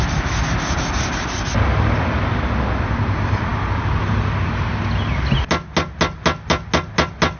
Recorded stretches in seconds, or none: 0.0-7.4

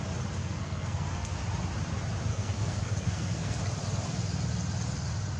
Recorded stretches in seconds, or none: 0.0-0.4; 1.3-2.3; 3.6-5.4